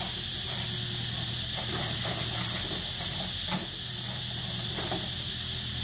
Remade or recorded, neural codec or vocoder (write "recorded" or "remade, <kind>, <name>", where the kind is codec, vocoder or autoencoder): recorded